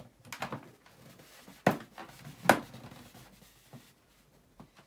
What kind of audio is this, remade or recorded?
recorded